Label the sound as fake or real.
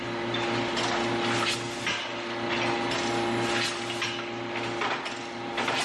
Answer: real